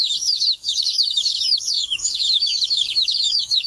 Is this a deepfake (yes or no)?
yes